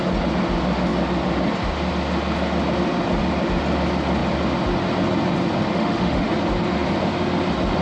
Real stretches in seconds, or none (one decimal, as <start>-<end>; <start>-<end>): 0.0-5.7; 6.3-7.8